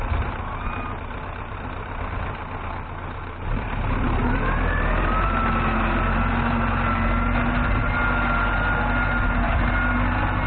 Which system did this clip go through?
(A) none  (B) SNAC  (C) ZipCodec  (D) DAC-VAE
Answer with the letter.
A